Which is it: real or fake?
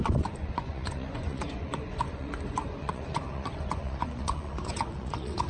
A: fake